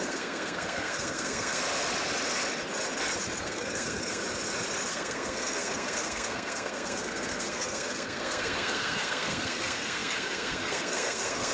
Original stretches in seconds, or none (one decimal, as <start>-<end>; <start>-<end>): 1.6-3.4; 4.2-4.9